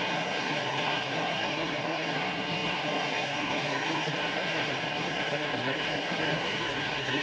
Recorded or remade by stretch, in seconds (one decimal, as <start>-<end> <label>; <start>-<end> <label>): 0.0-7.2 remade